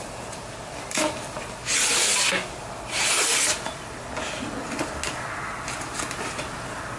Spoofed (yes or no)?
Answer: no